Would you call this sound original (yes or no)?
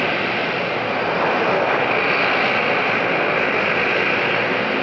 yes